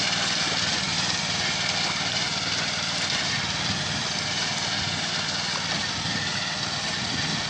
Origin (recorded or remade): recorded